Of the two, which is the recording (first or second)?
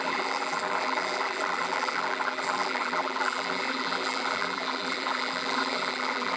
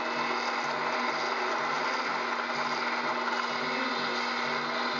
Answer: second